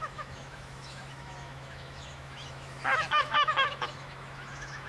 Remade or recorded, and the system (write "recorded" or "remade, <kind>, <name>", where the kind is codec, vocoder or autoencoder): remade, autoencoder, DAC-VAE